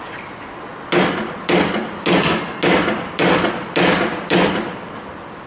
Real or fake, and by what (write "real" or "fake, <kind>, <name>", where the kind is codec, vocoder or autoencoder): real